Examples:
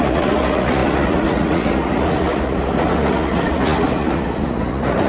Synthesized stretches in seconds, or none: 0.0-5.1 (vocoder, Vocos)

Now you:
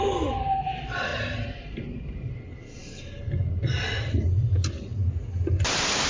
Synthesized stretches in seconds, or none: none